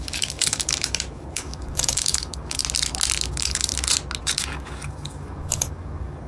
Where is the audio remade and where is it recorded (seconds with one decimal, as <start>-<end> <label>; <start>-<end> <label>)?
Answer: 0.0-2.6 remade; 2.6-3.3 recorded; 3.3-3.7 remade; 3.7-4.2 recorded; 4.2-6.3 remade